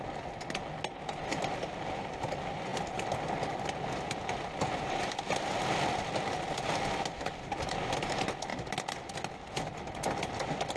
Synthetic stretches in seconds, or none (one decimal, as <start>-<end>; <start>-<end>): none